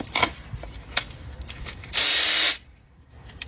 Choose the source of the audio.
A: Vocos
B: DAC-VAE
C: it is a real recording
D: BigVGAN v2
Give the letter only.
D